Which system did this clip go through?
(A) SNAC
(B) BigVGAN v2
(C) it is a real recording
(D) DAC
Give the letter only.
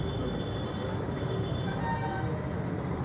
C